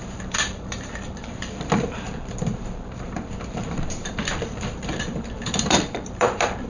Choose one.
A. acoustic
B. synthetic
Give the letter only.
B